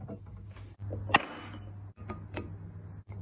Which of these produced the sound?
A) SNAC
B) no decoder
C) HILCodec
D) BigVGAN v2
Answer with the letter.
B